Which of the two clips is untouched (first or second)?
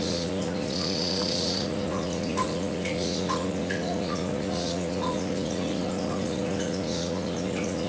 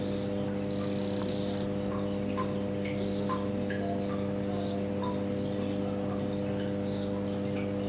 second